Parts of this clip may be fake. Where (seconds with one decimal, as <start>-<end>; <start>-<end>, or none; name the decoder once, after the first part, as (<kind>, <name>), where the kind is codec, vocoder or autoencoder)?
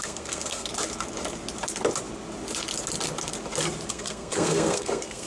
0.0-0.7 (codec, SNAC); 3.9-5.3